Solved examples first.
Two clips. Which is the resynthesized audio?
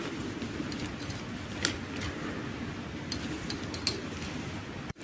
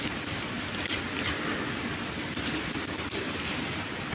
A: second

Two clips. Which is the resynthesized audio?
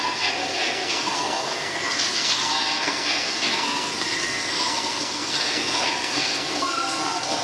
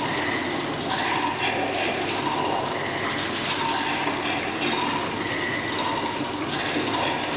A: first